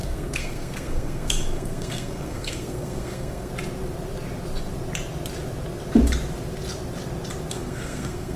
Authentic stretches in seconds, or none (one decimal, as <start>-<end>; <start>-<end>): 3.5-7.5